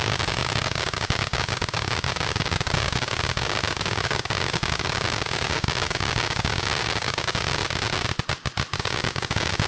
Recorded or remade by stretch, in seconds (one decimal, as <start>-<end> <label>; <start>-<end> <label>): 0.0-7.6 remade; 7.6-8.8 recorded; 8.8-9.7 remade